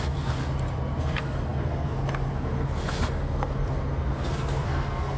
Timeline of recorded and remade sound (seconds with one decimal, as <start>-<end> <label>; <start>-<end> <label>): 0.0-0.4 remade; 0.4-1.0 recorded; 1.0-5.2 remade